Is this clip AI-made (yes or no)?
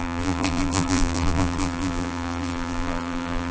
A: yes